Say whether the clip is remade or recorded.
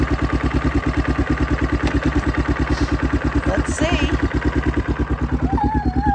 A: recorded